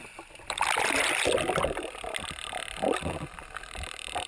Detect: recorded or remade recorded